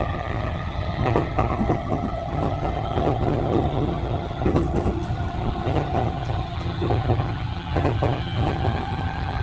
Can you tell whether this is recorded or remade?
remade